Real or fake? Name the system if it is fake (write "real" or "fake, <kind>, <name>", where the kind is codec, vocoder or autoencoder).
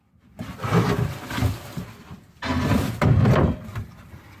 real